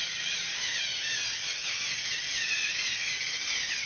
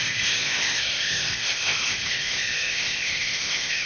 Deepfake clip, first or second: second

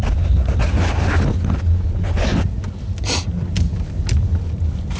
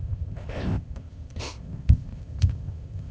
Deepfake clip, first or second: second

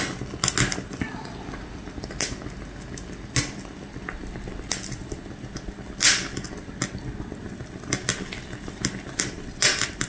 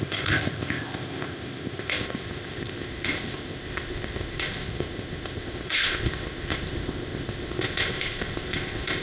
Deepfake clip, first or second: second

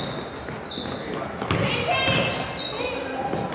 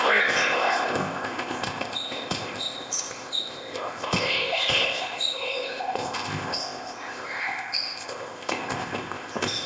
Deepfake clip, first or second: second